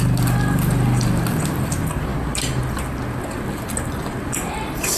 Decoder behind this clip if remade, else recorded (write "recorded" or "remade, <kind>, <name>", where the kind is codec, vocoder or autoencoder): recorded